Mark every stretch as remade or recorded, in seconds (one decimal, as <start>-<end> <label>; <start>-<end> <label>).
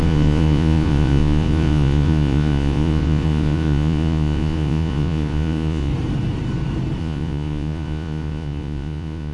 0.0-5.9 remade; 5.9-7.0 recorded; 7.0-9.3 remade